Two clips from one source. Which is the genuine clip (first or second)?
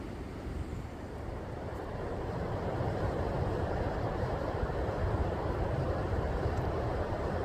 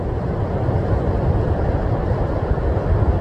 second